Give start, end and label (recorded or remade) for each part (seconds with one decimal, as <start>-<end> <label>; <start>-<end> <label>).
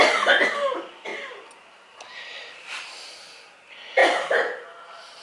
0.0-1.1 recorded; 1.1-1.9 remade; 1.9-4.0 recorded; 4.0-5.2 remade